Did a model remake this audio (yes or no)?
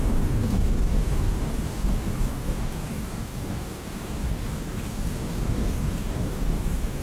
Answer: yes